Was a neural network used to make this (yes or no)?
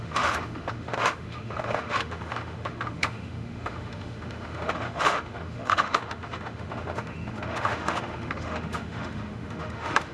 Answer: yes